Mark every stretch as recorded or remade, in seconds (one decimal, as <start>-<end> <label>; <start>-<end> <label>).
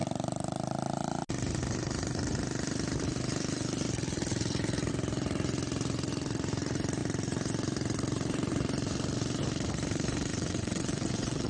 0.0-10.3 recorded; 10.3-11.5 remade